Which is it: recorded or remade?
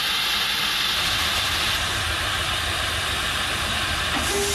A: recorded